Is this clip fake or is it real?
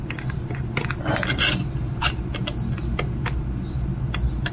real